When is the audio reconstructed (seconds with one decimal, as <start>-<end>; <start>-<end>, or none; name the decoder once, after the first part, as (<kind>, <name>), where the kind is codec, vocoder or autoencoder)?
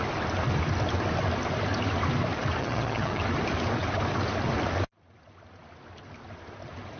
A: 2.6-3.2 (vocoder, HiFi-GAN)